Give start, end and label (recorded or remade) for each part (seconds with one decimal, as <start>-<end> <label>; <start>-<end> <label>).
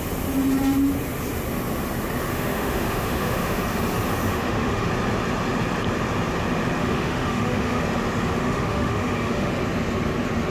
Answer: 0.0-2.3 recorded; 2.3-3.6 remade; 3.6-4.3 recorded; 4.3-4.9 remade; 4.9-6.8 recorded; 6.8-7.8 remade; 7.8-8.4 recorded; 8.4-9.5 remade; 9.5-10.5 recorded